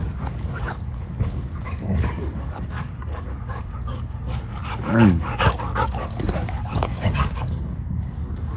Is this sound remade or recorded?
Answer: remade